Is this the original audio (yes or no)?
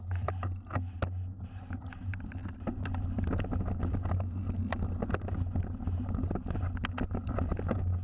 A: yes